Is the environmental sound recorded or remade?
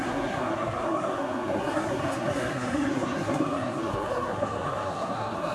remade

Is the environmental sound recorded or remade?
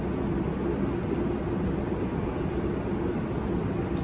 recorded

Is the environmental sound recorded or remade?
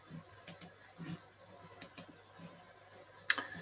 recorded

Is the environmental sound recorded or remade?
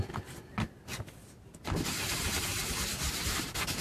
recorded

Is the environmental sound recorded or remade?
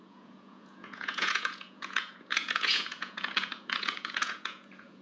remade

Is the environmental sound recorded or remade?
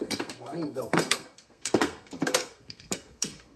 remade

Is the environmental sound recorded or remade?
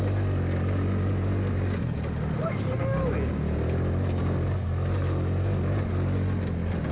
recorded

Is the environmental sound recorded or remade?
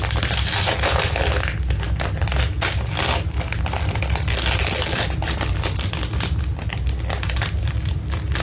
recorded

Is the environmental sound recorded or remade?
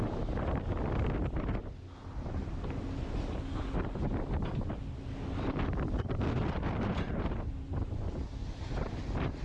recorded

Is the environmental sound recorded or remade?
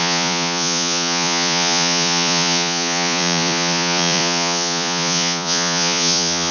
remade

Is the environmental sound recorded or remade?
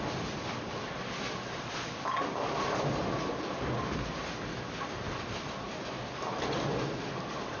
recorded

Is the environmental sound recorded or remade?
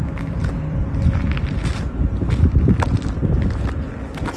recorded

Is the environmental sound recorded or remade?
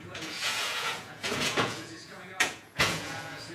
remade